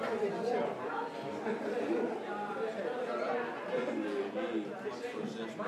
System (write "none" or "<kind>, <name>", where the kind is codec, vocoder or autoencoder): none